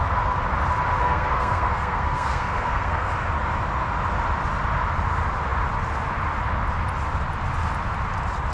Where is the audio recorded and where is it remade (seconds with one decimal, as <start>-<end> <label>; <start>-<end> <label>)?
0.0-1.0 recorded; 1.0-3.1 remade; 3.1-8.5 recorded